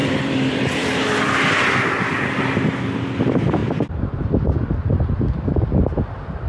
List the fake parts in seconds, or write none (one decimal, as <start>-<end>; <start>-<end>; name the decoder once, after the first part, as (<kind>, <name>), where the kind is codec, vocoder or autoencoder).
0.0-1.0 (vocoder, BigVGAN v2); 3.6-4.4